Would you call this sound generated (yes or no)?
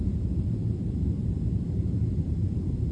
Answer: yes